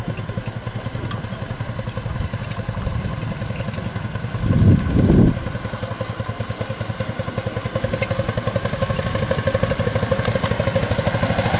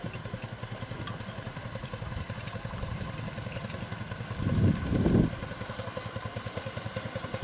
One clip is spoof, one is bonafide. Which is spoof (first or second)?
second